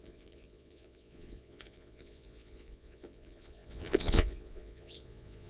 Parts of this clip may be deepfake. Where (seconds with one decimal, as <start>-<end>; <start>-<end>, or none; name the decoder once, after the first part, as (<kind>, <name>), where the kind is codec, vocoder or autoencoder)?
0.0-5.5 (vocoder, Vocos)

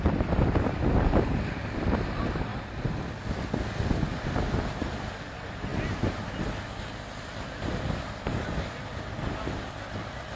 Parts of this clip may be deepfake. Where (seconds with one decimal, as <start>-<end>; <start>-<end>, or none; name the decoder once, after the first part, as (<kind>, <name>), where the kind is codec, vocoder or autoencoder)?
none

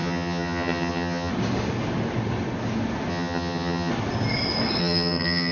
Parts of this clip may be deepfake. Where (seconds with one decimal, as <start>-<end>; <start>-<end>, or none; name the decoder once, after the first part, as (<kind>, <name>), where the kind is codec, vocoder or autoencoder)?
0.0-1.3 (vocoder, HiFi-GAN); 3.1-3.9; 4.8-5.5

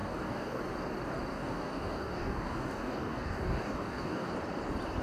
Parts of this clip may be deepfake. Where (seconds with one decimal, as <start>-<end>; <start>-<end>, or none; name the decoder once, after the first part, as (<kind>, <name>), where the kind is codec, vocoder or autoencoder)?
0.0-0.6 (codec, DAC); 1.3-4.3